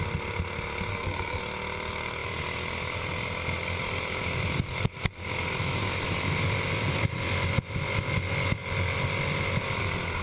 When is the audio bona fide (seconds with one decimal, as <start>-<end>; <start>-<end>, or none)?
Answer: 0.0-0.9; 1.4-10.2